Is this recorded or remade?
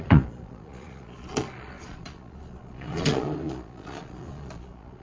remade